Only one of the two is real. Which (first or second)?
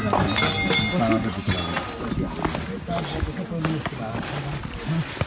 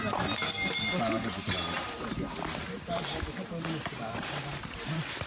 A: first